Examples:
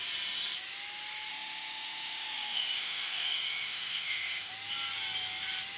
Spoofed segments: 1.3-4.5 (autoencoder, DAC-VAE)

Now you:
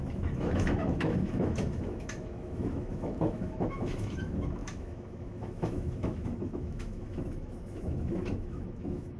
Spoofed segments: 0.0-9.2 (autoencoder, DAC-VAE)

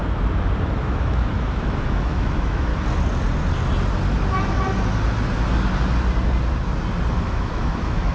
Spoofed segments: 0.8-2.7 (autoencoder, DAC-VAE); 7.2-8.1

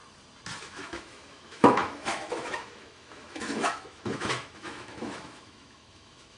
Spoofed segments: 0.6-6.4 (autoencoder, DAC-VAE)

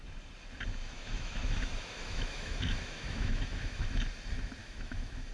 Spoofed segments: 0.8-4.0 (autoencoder, DAC-VAE); 4.6-5.3